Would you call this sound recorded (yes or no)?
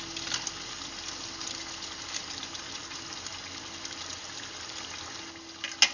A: yes